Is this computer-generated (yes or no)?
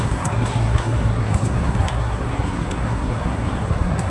yes